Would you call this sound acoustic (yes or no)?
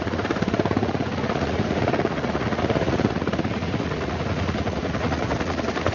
no